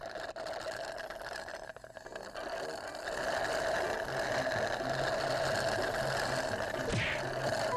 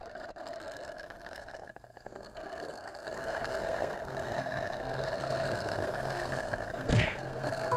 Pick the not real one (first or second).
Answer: second